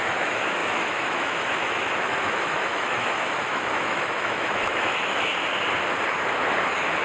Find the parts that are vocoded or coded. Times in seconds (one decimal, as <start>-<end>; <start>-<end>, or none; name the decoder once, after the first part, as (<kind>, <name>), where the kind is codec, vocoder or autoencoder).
0.0-5.3 (autoencoder, DAC-VAE)